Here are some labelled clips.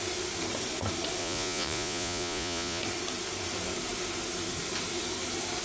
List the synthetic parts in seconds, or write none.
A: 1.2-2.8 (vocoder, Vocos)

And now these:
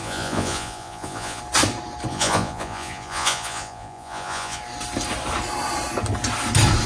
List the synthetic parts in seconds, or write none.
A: 0.0-1.4 (vocoder, Vocos); 2.1-4.6

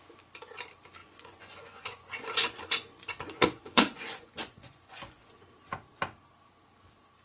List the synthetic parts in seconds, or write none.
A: 1.0-5.3 (vocoder, Vocos)